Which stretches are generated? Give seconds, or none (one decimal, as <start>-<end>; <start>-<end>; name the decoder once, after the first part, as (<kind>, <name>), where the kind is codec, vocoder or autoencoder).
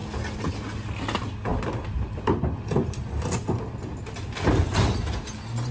none